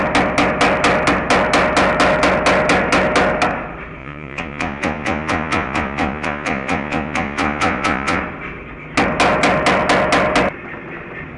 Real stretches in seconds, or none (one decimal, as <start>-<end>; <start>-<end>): 0.0-4.0; 8.2-11.4